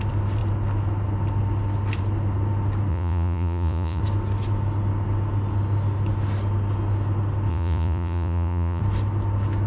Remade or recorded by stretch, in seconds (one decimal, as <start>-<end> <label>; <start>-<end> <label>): 0.0-2.9 recorded; 2.9-4.0 remade; 4.0-7.5 recorded; 7.5-8.8 remade; 8.8-9.7 recorded